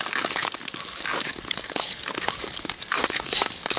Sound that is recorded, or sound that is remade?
remade